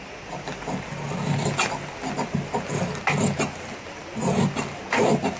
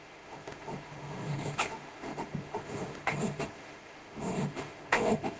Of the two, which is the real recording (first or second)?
first